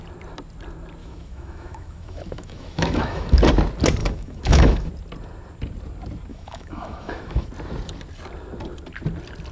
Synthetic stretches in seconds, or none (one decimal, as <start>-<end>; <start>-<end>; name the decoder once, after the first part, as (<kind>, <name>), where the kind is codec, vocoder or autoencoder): 1.0-3.4 (autoencoder, DAC-VAE); 4.0-4.9; 6.3-7.5